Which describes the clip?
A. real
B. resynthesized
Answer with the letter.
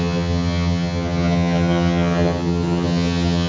B